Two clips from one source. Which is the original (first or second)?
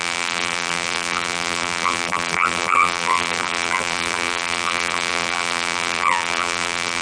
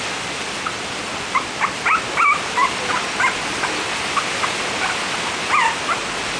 second